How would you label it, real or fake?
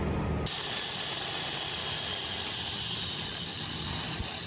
real